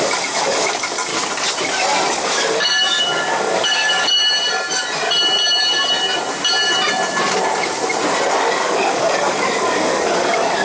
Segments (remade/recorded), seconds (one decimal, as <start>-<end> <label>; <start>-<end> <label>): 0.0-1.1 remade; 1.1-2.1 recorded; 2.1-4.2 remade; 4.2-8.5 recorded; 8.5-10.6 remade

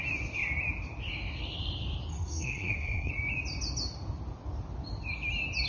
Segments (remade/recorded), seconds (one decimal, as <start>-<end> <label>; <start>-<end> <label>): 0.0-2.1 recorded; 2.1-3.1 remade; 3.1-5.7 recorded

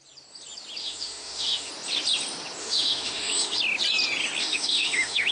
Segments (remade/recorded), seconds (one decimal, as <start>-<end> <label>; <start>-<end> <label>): 0.0-0.8 recorded; 0.8-1.7 remade; 1.7-2.6 recorded; 2.6-3.6 remade; 3.6-4.4 recorded; 4.4-5.3 remade

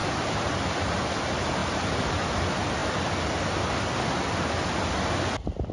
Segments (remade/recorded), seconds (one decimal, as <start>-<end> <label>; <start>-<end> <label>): 0.0-5.7 recorded

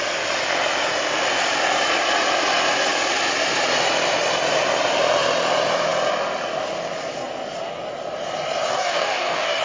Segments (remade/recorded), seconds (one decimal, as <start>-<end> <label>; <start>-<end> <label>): 0.0-8.7 recorded; 8.7-9.6 remade